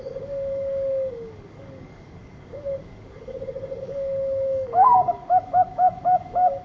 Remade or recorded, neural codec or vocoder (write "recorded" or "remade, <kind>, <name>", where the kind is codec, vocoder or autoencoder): remade, codec, DAC